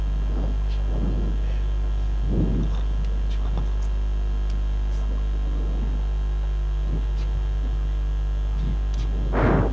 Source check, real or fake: real